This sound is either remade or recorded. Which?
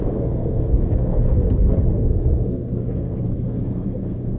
remade